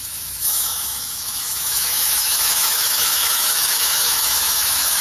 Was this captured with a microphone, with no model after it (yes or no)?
no